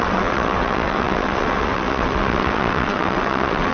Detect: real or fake fake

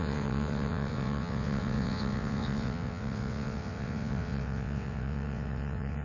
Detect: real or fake fake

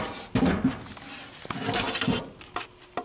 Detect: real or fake real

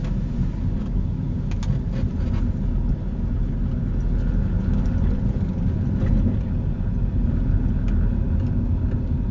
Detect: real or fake real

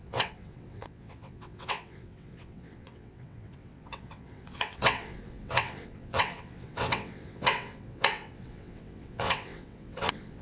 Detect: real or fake fake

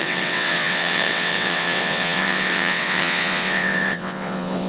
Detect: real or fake fake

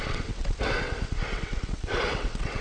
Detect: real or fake fake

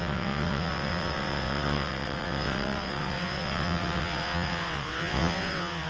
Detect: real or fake fake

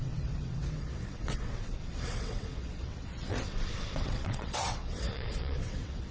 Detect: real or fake fake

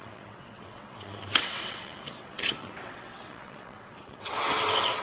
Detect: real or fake fake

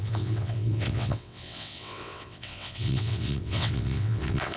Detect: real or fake fake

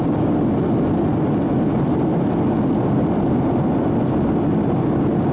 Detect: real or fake real